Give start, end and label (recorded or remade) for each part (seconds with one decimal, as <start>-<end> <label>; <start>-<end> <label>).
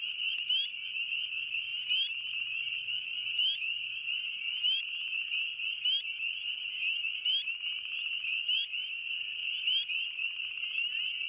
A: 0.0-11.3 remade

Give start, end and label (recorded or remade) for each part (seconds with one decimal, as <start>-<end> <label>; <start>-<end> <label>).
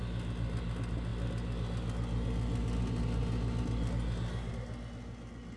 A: 0.0-5.6 recorded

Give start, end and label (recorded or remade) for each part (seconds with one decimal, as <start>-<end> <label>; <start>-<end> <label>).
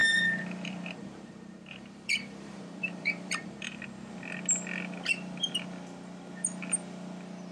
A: 0.0-3.8 remade; 3.8-7.5 recorded